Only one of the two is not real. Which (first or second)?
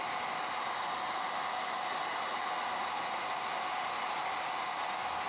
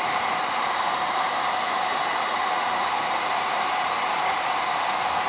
second